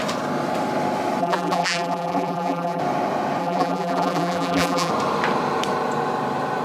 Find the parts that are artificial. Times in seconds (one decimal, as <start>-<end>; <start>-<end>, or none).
1.2-2.8; 3.4-4.9